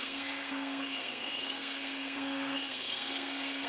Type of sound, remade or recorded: remade